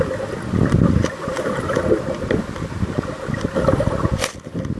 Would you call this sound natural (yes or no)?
yes